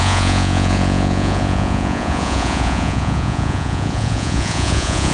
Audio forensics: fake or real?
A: fake